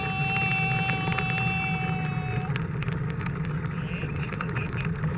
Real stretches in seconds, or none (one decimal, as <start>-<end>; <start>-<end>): 0.0-5.2